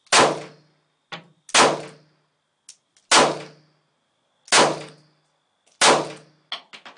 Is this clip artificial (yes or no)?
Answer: no